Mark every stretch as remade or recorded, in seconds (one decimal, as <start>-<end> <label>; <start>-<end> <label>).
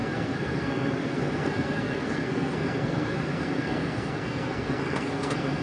0.0-5.6 remade